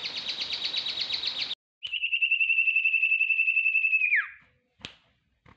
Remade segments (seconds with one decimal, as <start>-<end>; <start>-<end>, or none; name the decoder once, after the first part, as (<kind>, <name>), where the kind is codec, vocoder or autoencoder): none